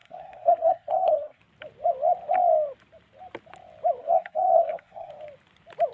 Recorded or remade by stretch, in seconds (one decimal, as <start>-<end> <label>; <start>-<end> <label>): 0.0-1.4 remade; 1.4-4.0 recorded; 4.0-5.1 remade; 5.1-5.9 recorded

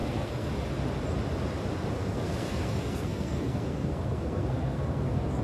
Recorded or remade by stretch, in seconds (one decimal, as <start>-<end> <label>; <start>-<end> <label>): 0.0-0.5 remade; 0.5-2.0 recorded; 2.0-5.4 remade